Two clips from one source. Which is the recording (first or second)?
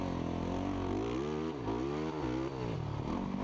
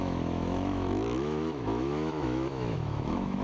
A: first